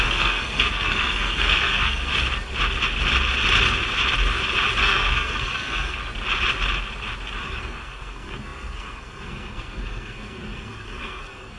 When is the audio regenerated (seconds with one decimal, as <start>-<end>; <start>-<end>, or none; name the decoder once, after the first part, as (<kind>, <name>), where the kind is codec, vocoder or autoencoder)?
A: 0.0-2.1 (codec, SNAC); 4.8-6.0; 7.4-11.6